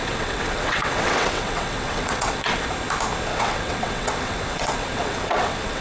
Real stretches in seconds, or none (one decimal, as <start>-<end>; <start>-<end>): 2.7-3.3